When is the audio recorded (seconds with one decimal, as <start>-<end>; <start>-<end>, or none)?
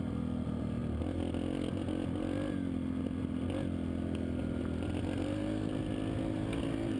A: 0.0-7.0